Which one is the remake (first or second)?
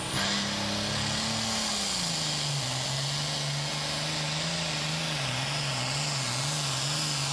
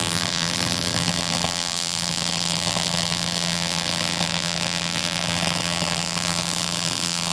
second